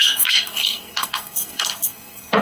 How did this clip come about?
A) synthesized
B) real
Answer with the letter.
A